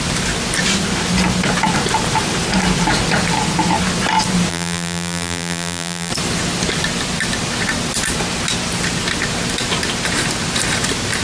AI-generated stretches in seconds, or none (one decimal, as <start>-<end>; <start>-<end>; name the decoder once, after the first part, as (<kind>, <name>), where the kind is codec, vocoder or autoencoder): 4.5-6.1 (vocoder, BigVGAN v2)